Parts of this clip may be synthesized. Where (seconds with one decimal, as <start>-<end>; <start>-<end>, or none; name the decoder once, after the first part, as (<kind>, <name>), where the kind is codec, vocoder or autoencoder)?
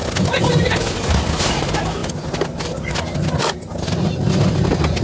none